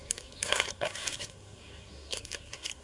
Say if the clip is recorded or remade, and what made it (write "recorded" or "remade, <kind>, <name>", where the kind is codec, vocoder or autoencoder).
remade, codec, SNAC